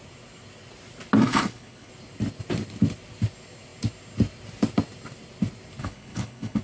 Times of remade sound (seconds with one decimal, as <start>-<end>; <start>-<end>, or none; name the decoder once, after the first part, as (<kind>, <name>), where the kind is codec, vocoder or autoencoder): 1.3-1.9 (codec, HILCodec); 5.8-6.6